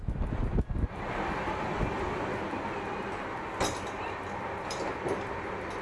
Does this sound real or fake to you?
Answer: real